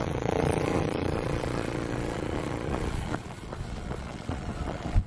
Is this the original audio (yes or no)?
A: no